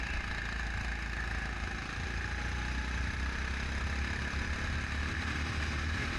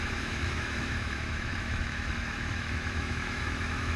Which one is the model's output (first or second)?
second